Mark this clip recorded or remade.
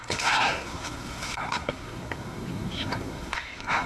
remade